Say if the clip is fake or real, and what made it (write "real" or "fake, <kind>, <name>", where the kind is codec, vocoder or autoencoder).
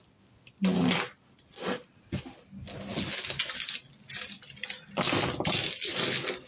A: real